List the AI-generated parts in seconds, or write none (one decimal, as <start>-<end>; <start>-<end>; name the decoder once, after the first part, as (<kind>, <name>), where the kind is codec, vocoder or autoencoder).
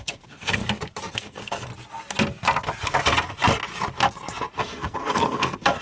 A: 0.0-0.6 (codec, SNAC); 1.1-1.7; 4.6-5.8